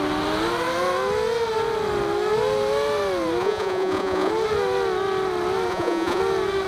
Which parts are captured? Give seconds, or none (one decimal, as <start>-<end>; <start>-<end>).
0.0-3.4; 4.3-5.7; 6.2-6.7